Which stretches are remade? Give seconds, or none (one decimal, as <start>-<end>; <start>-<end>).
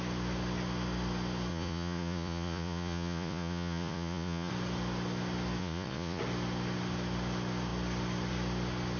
1.5-4.5; 5.6-6.2